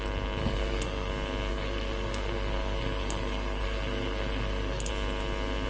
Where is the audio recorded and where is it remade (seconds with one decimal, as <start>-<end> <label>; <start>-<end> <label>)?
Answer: 0.0-0.4 recorded; 0.4-1.1 remade; 1.1-1.5 recorded; 1.5-4.9 remade; 4.9-5.7 recorded